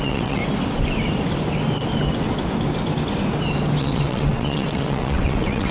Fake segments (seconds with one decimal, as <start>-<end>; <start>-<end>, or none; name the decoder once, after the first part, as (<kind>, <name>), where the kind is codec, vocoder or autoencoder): 0.0-0.4 (vocoder, WaveNeXt); 3.8-5.7